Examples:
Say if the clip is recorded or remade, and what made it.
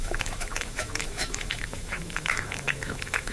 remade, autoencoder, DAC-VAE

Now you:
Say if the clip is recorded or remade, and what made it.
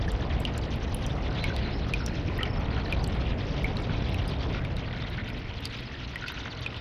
recorded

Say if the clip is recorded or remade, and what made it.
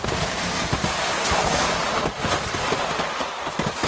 recorded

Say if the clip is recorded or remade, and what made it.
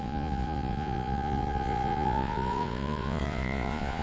remade, vocoder, Vocos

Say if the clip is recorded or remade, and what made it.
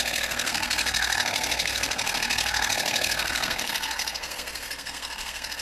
remade, codec, SNAC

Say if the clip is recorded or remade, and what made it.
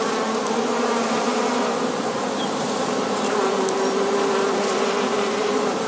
remade, vocoder, BigVGAN v2